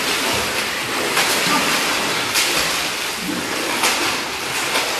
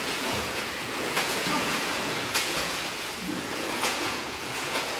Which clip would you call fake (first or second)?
second